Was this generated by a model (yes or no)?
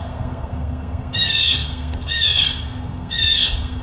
yes